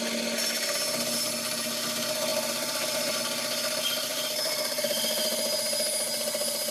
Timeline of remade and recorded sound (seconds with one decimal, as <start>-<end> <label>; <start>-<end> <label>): 0.0-2.3 recorded; 2.3-3.2 remade; 3.2-4.1 recorded; 4.1-4.8 remade; 4.8-6.7 recorded